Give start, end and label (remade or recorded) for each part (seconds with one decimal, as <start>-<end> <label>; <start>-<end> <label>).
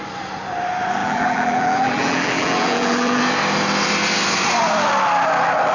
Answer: 0.0-1.0 recorded; 1.0-3.2 remade; 3.2-5.7 recorded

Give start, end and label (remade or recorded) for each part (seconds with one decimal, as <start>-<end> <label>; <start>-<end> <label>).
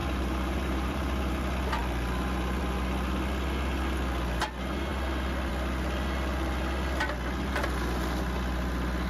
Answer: 0.0-1.4 remade; 1.4-9.1 recorded